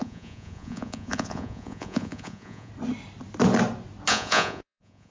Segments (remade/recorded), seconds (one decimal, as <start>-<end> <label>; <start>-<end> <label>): 0.0-2.7 remade; 2.7-4.1 recorded; 4.1-5.1 remade